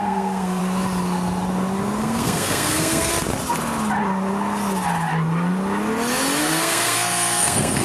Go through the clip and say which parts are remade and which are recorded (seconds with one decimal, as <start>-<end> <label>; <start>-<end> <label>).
0.0-0.6 remade; 0.6-2.0 recorded; 2.0-3.1 remade; 3.1-6.4 recorded; 6.4-7.8 remade